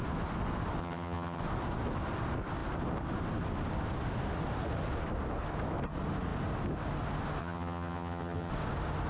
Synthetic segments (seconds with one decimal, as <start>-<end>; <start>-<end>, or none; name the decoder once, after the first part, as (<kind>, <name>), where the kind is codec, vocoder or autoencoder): 0.8-1.4 (vocoder, HiFi-GAN); 7.4-8.5